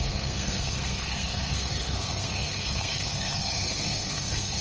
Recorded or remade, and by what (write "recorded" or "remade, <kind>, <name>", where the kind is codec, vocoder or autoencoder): remade, codec, SNAC